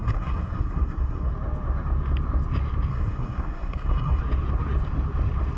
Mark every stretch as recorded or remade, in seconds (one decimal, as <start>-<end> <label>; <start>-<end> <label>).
0.0-1.3 remade; 1.3-2.9 recorded; 2.9-4.2 remade; 4.2-5.6 recorded